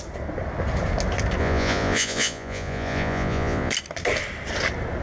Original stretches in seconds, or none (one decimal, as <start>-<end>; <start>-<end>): 0.0-1.4; 3.7-5.0